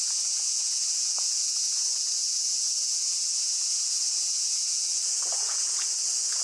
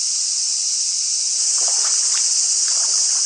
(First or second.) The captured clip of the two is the second